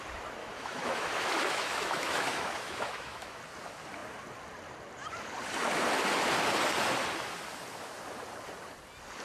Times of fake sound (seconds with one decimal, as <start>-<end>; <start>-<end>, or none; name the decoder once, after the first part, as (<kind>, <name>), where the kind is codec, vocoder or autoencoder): 0.4-3.4 (autoencoder, DAC-VAE)